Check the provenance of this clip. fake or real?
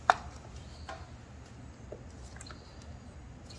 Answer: real